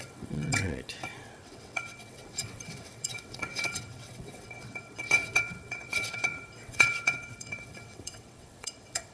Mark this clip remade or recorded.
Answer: remade